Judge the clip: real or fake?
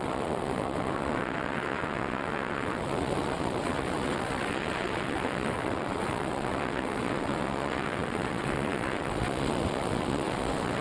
fake